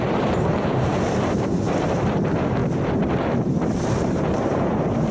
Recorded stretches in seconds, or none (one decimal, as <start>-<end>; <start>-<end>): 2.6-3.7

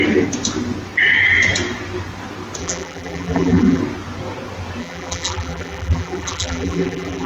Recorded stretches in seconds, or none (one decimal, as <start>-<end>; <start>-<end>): 0.0-2.6; 3.8-4.8

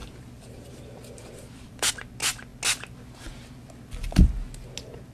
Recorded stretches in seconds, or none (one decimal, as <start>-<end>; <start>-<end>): 1.9-5.1

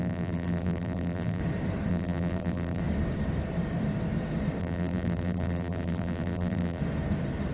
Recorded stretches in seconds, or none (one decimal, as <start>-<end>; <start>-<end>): 1.4-1.9; 2.8-4.6; 6.8-7.5

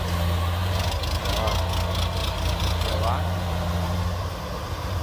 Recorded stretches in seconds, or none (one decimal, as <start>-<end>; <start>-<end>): 0.0-0.6; 1.2-2.2